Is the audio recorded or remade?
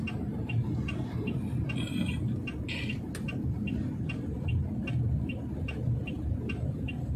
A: recorded